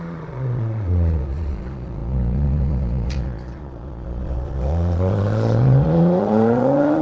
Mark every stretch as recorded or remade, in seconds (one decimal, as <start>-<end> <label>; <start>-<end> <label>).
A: 0.0-7.0 remade